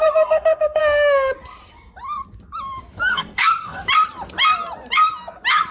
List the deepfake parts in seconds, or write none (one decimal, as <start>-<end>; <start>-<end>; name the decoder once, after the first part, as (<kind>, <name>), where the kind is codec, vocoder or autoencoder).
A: 0.0-0.8 (codec, SNAC); 3.1-3.8